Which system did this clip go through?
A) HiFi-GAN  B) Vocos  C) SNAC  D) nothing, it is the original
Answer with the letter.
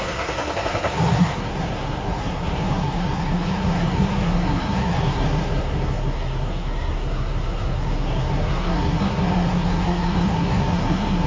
C